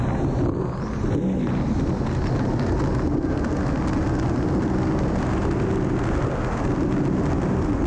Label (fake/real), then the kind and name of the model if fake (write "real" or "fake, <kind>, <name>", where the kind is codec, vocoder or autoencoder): real